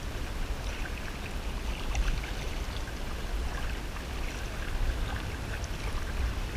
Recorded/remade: recorded